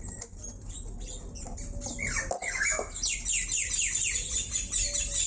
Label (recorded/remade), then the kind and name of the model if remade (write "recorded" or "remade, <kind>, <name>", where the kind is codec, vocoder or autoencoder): recorded